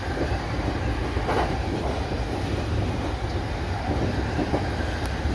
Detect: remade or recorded recorded